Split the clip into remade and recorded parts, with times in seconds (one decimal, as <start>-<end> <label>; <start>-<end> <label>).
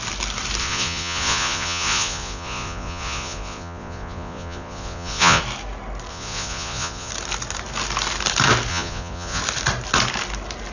0.0-0.6 recorded; 0.6-5.4 remade; 5.4-6.1 recorded; 6.1-7.1 remade; 7.1-8.7 recorded; 8.7-9.4 remade; 9.4-10.7 recorded